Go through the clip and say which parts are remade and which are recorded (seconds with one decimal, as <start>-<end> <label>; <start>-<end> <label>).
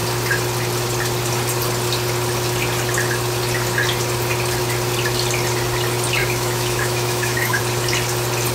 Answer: 0.0-6.2 recorded; 6.2-7.6 remade; 7.6-8.5 recorded